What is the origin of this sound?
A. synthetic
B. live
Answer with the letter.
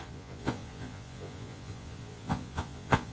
A